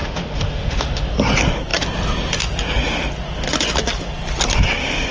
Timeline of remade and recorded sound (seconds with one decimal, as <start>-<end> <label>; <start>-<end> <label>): 0.0-1.1 remade; 1.1-5.1 recorded